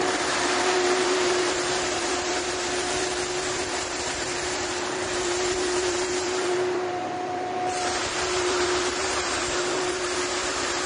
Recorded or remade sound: remade